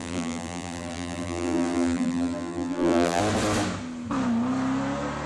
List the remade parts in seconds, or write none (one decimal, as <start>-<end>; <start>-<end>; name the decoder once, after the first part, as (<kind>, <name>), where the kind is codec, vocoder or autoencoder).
0.0-3.2 (vocoder, BigVGAN v2)